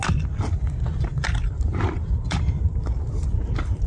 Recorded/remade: recorded